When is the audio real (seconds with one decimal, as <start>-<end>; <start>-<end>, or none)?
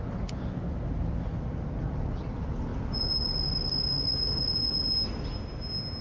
0.0-6.0